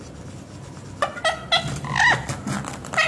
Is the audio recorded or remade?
recorded